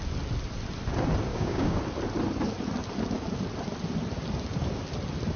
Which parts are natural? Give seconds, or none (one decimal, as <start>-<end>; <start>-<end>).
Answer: 0.0-1.3; 1.8-5.4

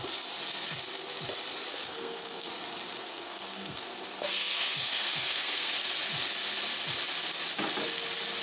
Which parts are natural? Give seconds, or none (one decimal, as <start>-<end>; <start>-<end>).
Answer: 0.0-1.7; 2.5-3.0; 5.7-8.4

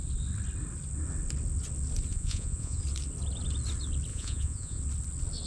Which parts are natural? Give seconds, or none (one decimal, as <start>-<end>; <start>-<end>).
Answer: 0.0-2.1; 2.8-4.1; 4.8-5.5

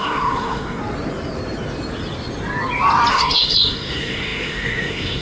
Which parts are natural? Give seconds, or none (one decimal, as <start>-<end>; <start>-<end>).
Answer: 0.8-3.1

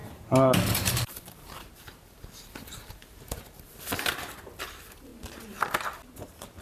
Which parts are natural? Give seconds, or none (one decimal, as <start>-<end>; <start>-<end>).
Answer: 5.1-6.6